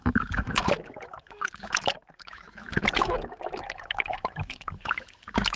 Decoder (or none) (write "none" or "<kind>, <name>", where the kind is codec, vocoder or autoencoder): autoencoder, DAC-VAE